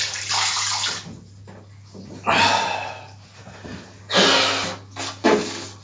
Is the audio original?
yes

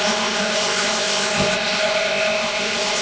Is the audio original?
no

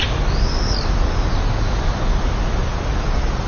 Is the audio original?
yes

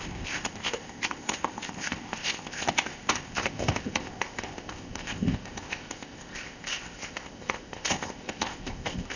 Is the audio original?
no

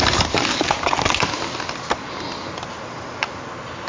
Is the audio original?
yes